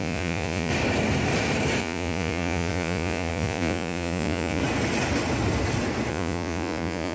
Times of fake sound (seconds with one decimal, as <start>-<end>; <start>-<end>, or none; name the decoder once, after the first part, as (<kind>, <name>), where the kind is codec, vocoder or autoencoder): 0.0-0.7 (vocoder, Vocos); 1.8-4.6; 6.1-7.1